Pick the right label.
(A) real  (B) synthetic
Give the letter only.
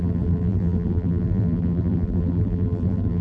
B